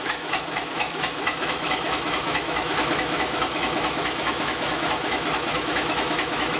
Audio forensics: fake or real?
fake